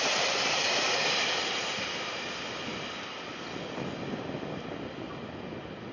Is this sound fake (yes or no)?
no